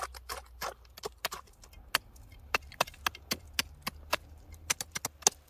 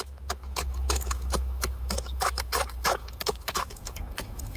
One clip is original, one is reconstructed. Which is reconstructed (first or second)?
second